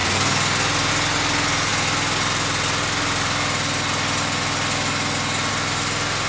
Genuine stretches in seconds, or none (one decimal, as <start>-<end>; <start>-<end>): 0.0-6.3